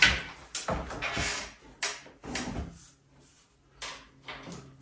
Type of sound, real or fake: real